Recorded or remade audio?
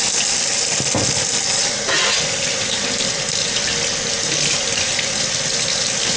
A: recorded